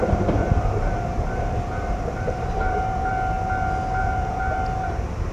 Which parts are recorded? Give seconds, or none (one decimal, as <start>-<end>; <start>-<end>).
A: 3.1-4.0; 4.6-5.3